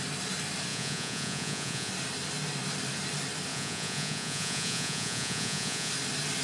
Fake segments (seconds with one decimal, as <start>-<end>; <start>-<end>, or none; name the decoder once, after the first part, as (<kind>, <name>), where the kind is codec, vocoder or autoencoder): 0.7-1.9 (vocoder, Vocos); 3.5-5.9